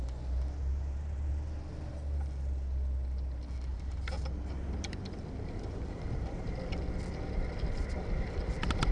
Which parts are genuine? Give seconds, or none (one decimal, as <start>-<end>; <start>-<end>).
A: 0.0-0.6; 1.3-3.7; 6.4-8.9